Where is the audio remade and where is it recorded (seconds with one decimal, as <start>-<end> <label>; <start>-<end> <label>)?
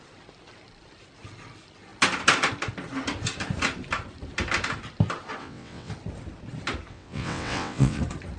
0.0-5.4 recorded; 5.4-5.9 remade; 5.9-6.9 recorded; 6.9-8.0 remade; 8.0-8.4 recorded